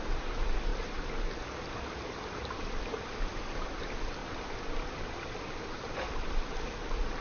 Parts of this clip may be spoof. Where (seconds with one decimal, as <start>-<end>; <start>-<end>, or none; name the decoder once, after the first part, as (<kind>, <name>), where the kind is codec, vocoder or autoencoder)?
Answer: none